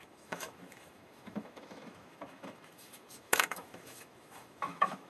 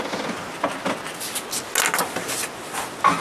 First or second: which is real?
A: second